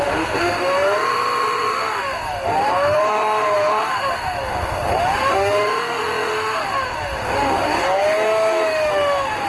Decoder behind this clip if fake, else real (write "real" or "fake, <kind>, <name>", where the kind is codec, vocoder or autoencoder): fake, autoencoder, DAC-VAE